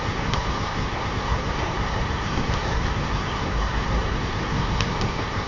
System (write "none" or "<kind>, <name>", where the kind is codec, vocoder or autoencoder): codec, SNAC